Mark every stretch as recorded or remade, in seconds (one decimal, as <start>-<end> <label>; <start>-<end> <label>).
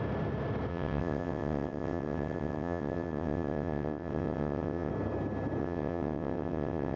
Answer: 0.0-0.7 recorded; 0.7-4.9 remade; 4.9-5.6 recorded; 5.6-7.0 remade